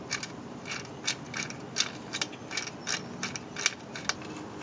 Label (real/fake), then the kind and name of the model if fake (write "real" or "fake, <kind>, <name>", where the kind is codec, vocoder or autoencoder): real